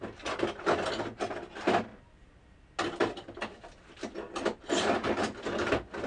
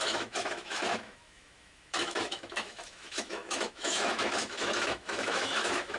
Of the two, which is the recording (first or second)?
first